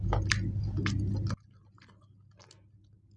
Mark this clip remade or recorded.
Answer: recorded